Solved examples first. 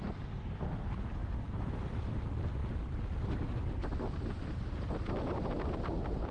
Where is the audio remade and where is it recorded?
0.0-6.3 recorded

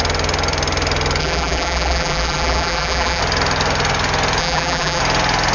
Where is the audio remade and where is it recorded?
0.0-1.2 recorded; 1.2-3.2 remade; 3.2-4.4 recorded; 4.4-5.0 remade; 5.0-5.5 recorded

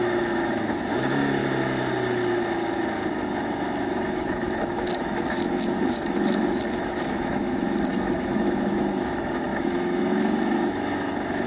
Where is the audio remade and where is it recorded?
0.0-1.4 remade; 1.4-3.1 recorded; 3.1-11.5 remade